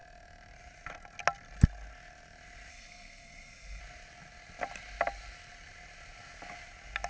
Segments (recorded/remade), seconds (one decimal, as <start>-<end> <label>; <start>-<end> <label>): 0.0-2.7 recorded; 2.7-3.8 remade; 3.8-7.1 recorded